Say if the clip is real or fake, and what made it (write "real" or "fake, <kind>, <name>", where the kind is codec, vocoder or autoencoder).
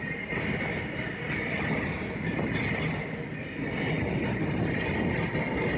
real